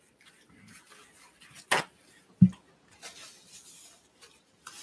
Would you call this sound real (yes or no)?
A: yes